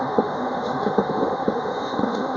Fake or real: fake